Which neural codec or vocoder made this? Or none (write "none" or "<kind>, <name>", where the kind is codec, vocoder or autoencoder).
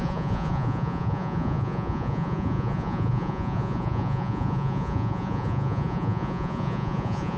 vocoder, Vocos